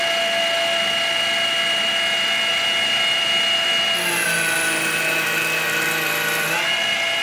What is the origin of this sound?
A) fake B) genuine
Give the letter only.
B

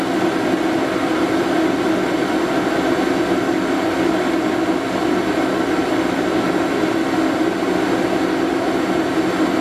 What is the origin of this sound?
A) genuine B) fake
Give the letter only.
A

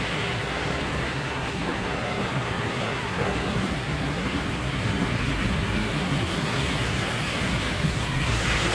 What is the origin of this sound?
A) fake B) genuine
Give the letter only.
A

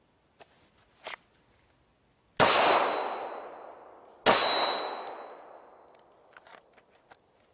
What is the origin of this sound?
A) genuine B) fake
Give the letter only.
A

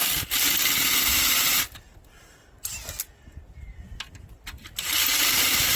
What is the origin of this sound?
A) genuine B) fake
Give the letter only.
A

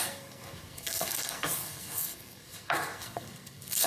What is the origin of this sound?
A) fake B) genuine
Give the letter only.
A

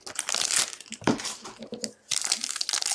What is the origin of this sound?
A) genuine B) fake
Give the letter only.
A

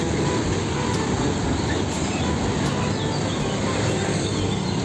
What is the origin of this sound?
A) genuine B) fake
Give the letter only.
A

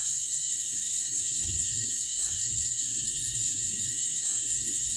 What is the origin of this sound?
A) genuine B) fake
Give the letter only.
B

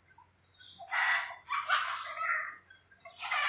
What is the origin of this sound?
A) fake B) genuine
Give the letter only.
B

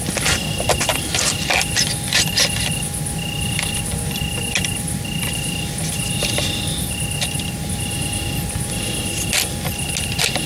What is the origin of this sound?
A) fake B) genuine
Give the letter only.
B